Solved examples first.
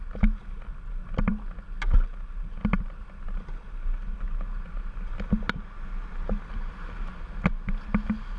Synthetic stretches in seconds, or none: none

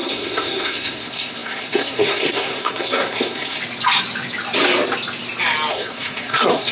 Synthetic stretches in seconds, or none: 0.0-3.6 (codec, SNAC); 5.7-6.7

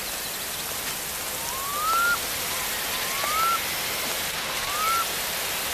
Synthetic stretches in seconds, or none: none

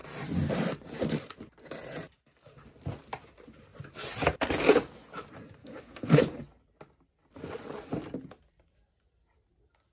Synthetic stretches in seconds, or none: 5.6-6.2 (codec, SNAC)

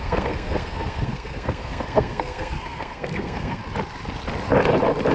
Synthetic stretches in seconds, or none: 0.0-3.6 (codec, SNAC)

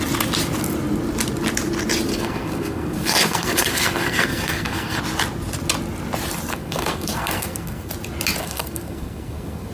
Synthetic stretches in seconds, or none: 2.1-5.0 (codec, SNAC); 6.5-7.9; 8.4-9.7